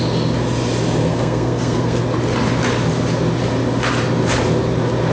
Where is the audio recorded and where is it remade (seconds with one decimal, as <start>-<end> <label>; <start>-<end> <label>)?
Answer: 0.0-1.0 recorded; 1.0-2.0 remade; 2.0-5.1 recorded